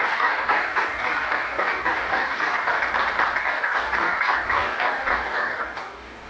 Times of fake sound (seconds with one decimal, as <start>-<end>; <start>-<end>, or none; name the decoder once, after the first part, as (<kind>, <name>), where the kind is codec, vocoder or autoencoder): 0.0-2.8 (codec, DAC); 3.4-6.3